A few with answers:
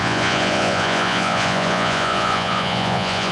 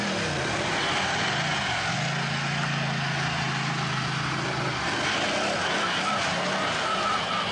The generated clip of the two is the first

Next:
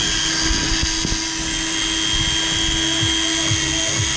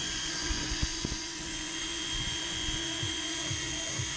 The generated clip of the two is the second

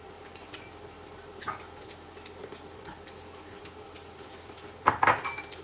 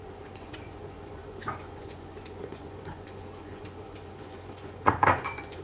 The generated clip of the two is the second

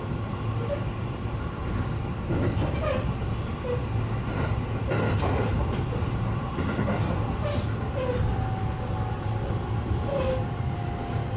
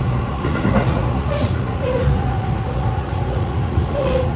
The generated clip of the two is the second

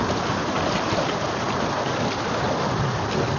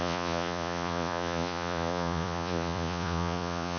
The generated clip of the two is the second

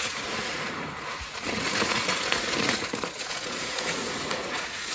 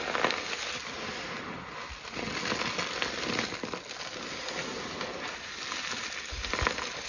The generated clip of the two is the first